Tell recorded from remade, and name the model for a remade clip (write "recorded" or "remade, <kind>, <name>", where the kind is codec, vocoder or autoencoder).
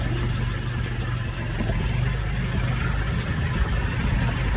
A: recorded